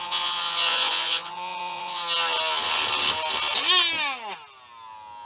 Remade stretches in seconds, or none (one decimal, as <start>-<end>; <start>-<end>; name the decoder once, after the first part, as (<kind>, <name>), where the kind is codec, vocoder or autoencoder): 0.0-2.0 (vocoder, Vocos)

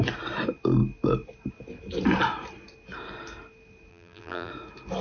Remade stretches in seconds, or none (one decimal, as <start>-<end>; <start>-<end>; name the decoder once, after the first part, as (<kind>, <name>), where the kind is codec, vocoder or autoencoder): 3.9-4.5 (vocoder, BigVGAN v2)

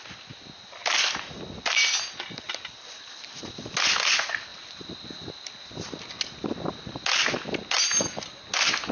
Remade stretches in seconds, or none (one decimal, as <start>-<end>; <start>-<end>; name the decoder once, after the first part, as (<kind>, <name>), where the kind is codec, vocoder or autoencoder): 4.5-5.3 (vocoder, BigVGAN v2)

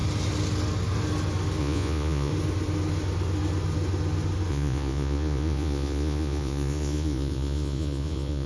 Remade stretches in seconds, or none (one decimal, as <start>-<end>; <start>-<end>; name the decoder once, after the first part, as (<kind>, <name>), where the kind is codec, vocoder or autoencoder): 1.6-2.3 (vocoder, Vocos); 4.5-8.5